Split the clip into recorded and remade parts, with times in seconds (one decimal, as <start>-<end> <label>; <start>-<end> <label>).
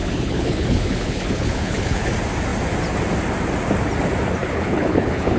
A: 0.0-2.1 remade; 2.1-4.4 recorded; 4.4-5.4 remade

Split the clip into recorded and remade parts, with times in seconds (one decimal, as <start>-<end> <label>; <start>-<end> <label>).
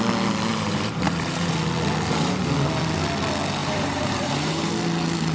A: 0.0-0.5 recorded; 0.5-1.5 remade; 1.5-3.6 recorded; 3.6-4.7 remade; 4.7-5.3 recorded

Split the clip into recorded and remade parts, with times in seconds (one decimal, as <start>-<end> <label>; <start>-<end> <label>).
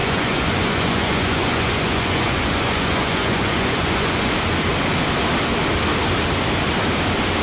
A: 0.0-4.3 remade; 4.3-7.4 recorded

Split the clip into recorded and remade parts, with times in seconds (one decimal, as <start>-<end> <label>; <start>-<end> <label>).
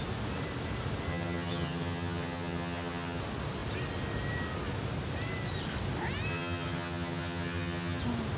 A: 0.0-1.1 recorded; 1.1-3.2 remade; 3.2-6.3 recorded; 6.3-8.0 remade; 8.0-8.4 recorded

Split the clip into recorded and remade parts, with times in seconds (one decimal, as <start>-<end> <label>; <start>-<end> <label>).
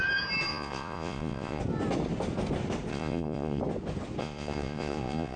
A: 0.0-0.5 recorded; 0.5-1.6 remade; 1.6-2.9 recorded; 2.9-3.6 remade; 3.6-4.2 recorded; 4.2-5.4 remade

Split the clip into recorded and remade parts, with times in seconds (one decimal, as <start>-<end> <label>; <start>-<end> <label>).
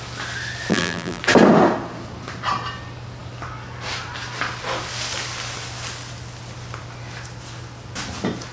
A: 0.0-0.7 recorded; 0.7-1.2 remade; 1.2-8.5 recorded